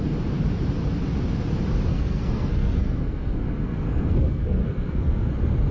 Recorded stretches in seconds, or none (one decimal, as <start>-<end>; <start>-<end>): 0.0-1.9; 5.3-5.7